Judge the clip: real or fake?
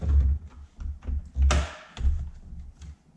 real